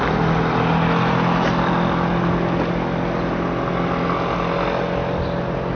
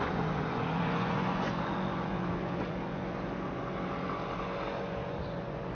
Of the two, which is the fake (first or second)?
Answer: second